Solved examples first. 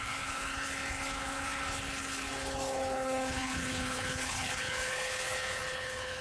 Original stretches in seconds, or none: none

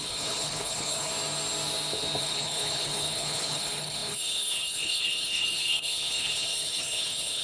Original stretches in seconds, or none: 1.1-2.2

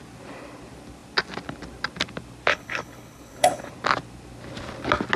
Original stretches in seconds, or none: 0.0-2.5; 3.7-5.2